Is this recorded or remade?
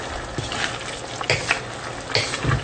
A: recorded